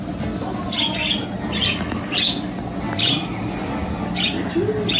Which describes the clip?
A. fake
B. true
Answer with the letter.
B